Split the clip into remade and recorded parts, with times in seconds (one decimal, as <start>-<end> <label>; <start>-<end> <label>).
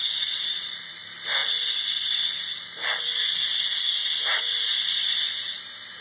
0.0-0.9 remade; 0.9-6.0 recorded